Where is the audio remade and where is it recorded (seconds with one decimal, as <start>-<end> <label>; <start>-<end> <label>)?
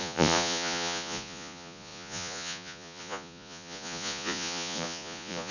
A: 0.0-5.5 remade